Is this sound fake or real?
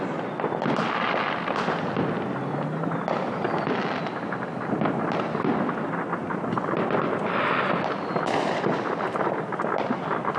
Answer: real